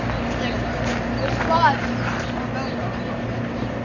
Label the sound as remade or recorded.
recorded